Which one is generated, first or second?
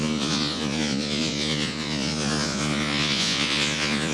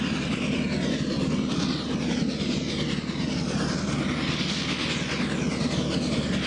first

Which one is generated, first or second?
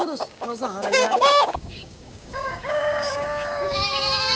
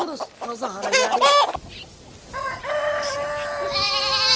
first